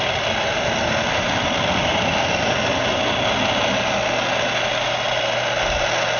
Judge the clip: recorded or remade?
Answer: recorded